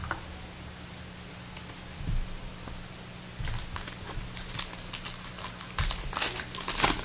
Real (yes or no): yes